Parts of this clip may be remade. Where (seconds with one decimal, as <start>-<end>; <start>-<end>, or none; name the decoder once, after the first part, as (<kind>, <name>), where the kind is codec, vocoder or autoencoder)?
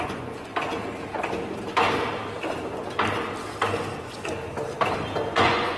0.0-0.5 (vocoder, Vocos); 4.0-4.4; 5.3-5.8